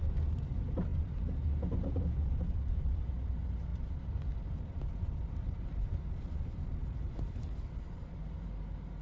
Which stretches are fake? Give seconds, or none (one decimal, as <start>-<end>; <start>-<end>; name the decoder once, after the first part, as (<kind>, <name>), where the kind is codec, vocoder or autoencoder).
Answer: none